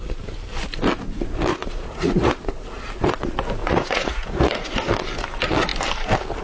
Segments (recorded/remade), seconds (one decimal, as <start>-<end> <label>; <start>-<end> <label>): 0.0-1.5 recorded; 1.5-2.5 remade; 2.5-3.6 recorded; 3.6-4.7 remade; 4.7-6.4 recorded